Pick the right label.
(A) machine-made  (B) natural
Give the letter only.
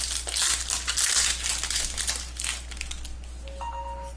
B